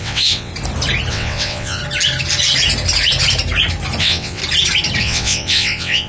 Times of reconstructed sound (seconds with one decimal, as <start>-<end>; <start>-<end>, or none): 0.0-0.5; 1.1-1.8; 4.0-4.4; 5.0-6.1

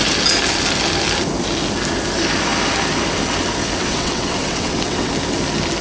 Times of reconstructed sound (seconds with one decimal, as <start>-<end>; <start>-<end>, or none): 3.8-5.1

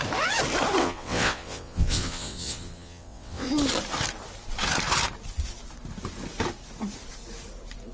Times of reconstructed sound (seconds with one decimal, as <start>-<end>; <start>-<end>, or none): 0.8-3.5

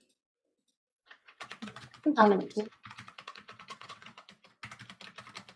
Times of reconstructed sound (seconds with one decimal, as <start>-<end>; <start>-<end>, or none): 0.9-4.3